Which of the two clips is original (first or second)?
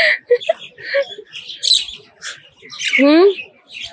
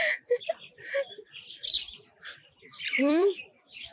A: first